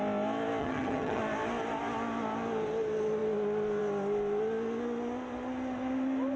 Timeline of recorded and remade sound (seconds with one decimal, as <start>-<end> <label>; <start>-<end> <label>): 0.0-0.6 recorded; 0.6-1.2 remade; 1.2-6.4 recorded